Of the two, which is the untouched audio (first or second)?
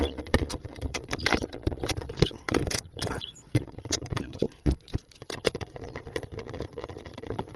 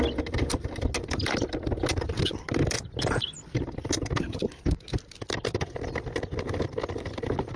second